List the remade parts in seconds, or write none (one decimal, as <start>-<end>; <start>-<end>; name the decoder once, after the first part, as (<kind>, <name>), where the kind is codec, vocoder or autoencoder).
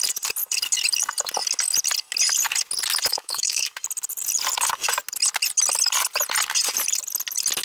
3.1-3.7 (autoencoder, DAC-VAE)